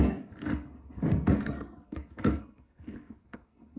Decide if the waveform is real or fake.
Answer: fake